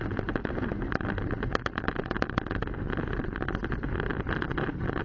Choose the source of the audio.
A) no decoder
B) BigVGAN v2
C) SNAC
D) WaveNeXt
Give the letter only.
A